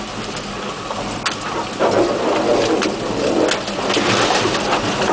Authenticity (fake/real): real